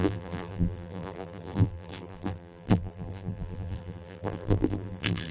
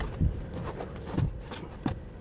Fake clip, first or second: first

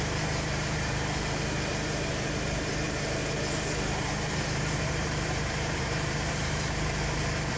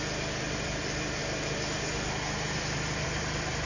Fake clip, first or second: first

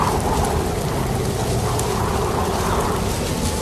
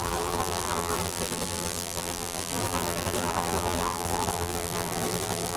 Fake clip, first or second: second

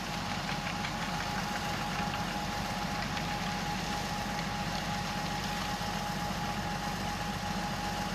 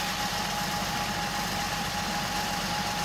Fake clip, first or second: second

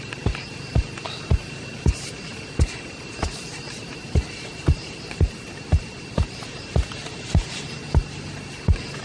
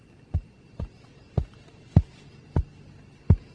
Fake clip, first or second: first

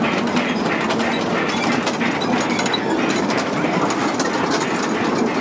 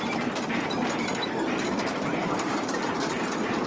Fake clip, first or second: second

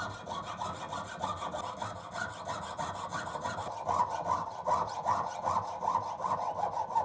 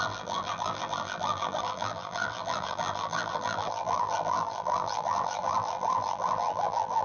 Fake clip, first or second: second